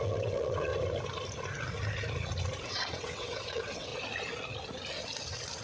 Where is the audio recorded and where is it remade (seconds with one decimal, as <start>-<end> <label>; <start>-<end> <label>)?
0.0-0.7 remade; 0.7-2.6 recorded; 2.6-3.9 remade; 3.9-5.6 recorded